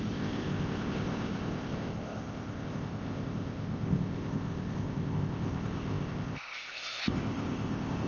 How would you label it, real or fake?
fake